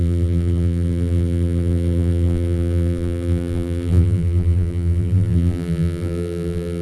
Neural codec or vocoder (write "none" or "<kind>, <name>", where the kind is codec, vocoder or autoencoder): vocoder, BigVGAN v2